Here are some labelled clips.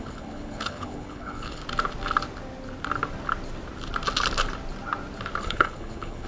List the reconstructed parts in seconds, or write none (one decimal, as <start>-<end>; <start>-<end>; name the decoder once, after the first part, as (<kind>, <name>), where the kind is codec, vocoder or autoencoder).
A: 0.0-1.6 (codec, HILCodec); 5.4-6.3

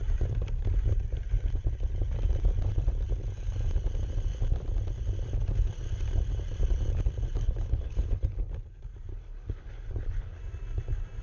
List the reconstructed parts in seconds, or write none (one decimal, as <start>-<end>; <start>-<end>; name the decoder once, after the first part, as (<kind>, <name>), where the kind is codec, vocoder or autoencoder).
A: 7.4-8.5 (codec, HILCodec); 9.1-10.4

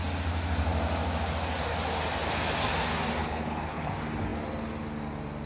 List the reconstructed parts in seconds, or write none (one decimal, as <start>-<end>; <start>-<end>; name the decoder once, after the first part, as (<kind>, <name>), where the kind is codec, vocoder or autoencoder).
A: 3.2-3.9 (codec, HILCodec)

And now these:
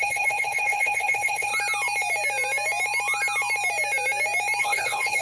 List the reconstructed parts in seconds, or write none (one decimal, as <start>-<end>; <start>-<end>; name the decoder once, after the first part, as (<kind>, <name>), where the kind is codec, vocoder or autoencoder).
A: 0.0-1.5 (codec, HILCodec); 4.6-5.2